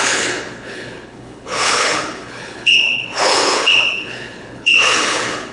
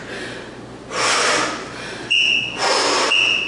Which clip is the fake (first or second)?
first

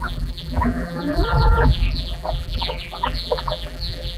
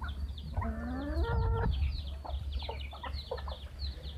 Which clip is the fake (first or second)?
first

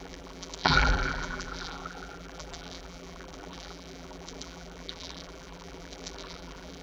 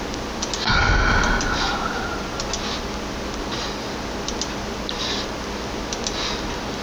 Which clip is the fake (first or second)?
first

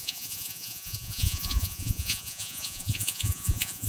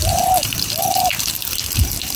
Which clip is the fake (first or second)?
first